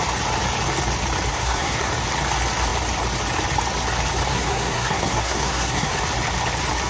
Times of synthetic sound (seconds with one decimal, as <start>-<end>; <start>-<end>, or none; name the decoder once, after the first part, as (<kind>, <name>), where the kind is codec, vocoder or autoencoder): 1.3-1.9 (codec, SNAC); 4.3-6.0